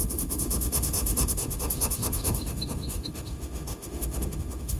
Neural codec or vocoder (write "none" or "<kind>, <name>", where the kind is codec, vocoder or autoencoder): autoencoder, DAC-VAE